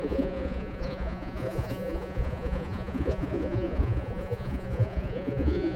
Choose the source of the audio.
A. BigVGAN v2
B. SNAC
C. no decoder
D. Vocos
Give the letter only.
D